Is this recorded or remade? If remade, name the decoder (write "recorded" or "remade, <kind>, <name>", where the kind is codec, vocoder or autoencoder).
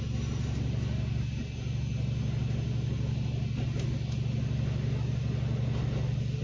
recorded